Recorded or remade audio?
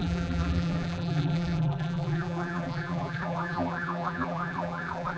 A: remade